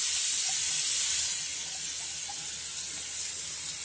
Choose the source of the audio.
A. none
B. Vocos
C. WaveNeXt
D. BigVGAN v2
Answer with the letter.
A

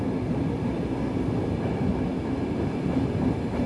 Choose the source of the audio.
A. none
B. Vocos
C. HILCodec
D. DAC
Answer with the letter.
A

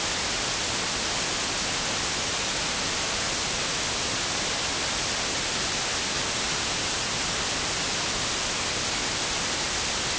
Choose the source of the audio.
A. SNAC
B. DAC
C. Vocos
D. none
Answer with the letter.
D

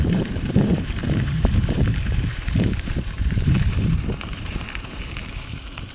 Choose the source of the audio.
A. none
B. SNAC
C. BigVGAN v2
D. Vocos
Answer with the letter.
C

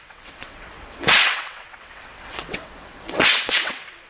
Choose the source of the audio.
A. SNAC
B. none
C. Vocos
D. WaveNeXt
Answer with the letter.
D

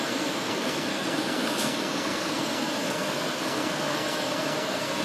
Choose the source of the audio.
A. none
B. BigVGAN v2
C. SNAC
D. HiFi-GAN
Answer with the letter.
C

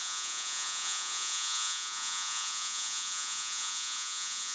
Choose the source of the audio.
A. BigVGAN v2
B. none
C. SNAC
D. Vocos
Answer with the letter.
D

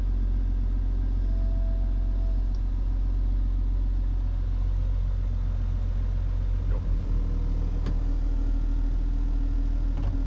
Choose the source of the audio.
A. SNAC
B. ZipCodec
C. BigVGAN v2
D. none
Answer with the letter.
D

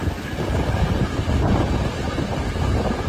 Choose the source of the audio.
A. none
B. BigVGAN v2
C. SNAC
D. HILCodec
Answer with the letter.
A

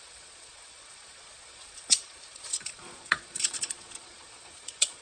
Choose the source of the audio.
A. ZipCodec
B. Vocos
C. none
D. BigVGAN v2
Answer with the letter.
B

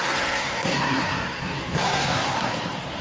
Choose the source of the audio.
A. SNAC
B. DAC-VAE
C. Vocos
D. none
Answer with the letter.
A